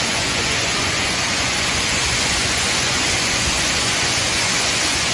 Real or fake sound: fake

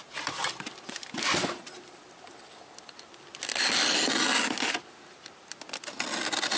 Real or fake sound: real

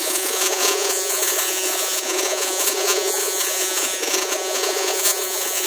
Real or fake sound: fake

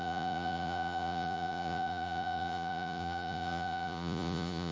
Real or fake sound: fake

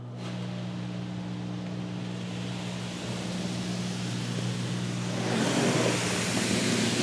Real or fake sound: real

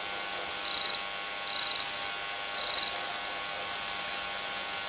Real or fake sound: real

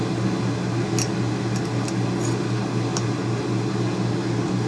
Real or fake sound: real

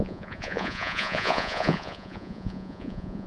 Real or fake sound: fake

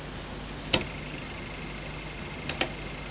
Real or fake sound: real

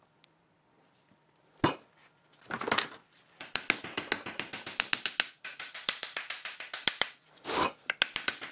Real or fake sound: real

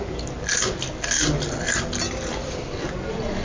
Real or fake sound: real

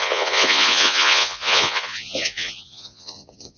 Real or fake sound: fake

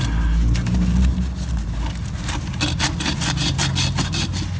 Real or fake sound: real